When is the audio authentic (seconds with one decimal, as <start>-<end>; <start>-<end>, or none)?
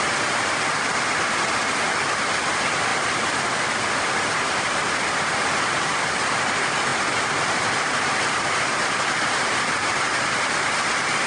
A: 0.0-11.3